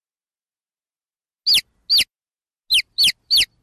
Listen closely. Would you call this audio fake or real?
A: real